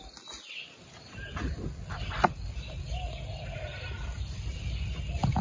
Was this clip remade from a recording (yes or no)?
no